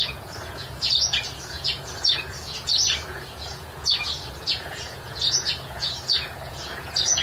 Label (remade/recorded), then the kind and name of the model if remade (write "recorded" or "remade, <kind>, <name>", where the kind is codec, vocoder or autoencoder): remade, vocoder, Vocos